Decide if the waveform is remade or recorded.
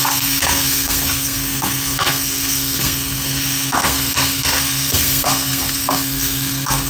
remade